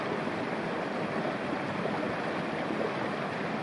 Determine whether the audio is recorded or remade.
recorded